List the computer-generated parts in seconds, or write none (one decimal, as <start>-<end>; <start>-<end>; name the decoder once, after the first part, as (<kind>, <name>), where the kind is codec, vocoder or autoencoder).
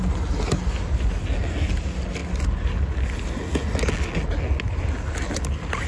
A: none